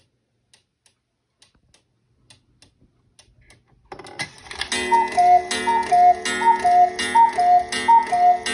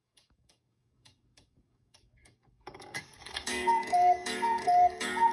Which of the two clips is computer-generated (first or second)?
second